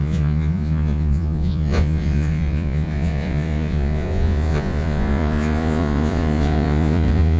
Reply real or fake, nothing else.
fake